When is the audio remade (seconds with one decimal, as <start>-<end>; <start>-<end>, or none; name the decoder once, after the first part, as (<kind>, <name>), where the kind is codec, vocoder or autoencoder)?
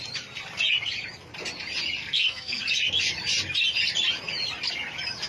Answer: 2.0-2.6 (codec, SNAC)